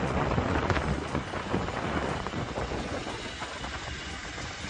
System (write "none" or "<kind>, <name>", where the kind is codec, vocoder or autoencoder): vocoder, Vocos